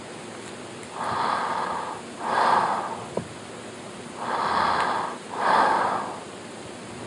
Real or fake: real